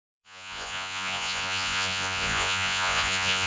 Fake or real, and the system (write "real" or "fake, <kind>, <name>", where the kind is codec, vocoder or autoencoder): fake, vocoder, Vocos